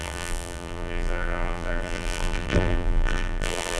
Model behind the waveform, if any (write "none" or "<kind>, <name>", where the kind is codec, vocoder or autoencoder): vocoder, BigVGAN v2